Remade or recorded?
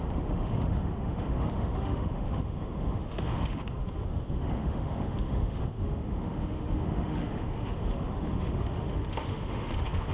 remade